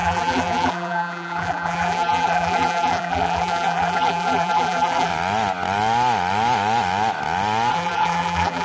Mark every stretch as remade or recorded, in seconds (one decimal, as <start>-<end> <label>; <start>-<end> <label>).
0.0-5.1 remade; 5.1-7.7 recorded; 7.7-8.6 remade